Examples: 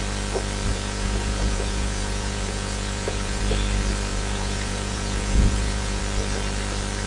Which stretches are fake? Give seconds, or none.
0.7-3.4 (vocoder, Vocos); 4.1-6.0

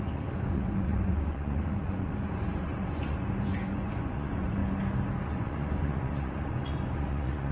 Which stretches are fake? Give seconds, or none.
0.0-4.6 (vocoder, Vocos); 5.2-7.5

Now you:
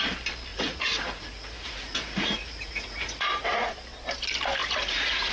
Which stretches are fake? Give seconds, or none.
0.5-3.7 (vocoder, Vocos); 4.6-5.3

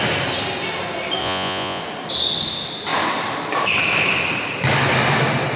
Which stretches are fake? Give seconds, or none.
1.2-1.8 (vocoder, Vocos)

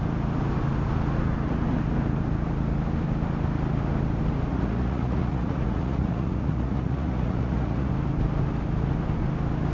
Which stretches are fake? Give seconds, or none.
4.5-7.9 (vocoder, Vocos)